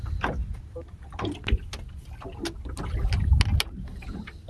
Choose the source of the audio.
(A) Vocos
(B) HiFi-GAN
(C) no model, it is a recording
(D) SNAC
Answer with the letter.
C